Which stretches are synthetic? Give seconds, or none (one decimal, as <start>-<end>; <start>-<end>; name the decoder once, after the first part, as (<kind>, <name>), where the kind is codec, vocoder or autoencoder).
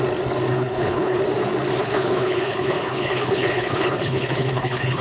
0.5-1.2 (codec, HILCodec); 1.8-5.0